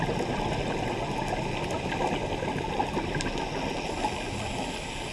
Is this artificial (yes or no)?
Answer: no